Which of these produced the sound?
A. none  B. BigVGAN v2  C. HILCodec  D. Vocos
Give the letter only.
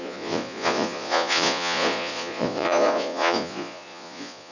D